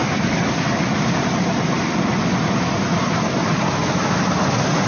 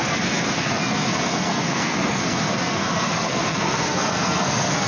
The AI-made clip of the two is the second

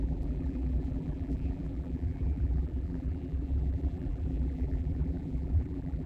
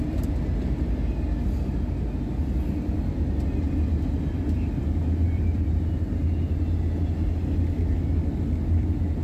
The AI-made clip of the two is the first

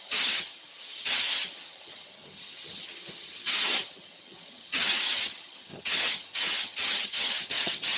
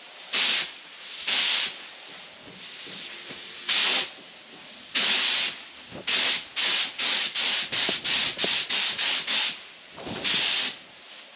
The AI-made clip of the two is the first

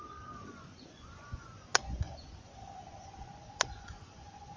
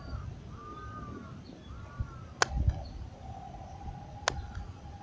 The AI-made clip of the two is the first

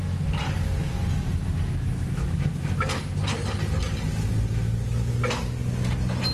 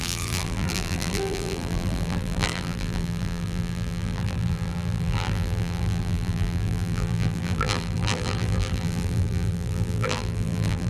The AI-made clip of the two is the second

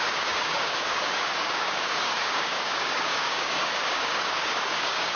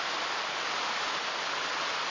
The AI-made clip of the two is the first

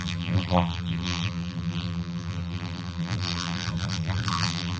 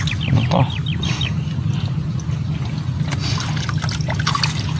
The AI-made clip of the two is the first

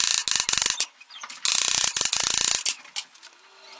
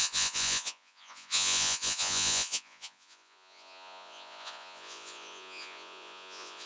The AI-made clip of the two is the second